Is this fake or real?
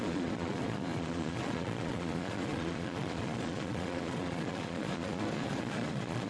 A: fake